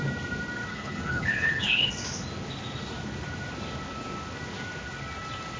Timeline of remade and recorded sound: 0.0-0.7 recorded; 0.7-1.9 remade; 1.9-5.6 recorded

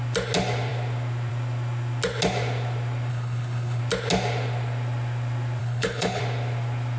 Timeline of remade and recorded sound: 0.0-3.1 recorded; 3.1-3.8 remade; 3.8-5.6 recorded; 5.6-6.2 remade; 6.2-7.0 recorded

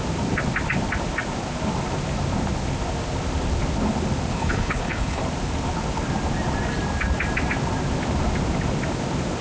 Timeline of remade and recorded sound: 0.0-4.3 recorded; 4.3-5.2 remade; 5.2-9.4 recorded

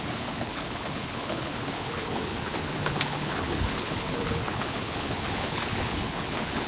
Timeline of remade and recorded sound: 0.0-6.7 remade